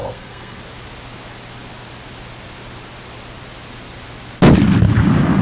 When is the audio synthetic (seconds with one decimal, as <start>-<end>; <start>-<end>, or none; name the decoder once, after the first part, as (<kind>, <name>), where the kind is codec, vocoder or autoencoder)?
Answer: 0.0-0.6 (codec, SNAC)